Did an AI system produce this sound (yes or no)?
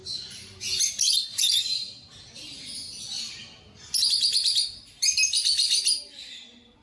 no